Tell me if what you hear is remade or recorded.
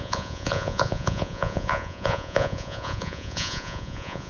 remade